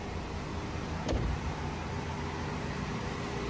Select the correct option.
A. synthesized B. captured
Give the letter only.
B